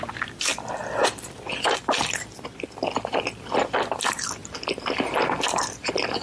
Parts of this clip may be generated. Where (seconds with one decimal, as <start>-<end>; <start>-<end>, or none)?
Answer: 0.0-6.2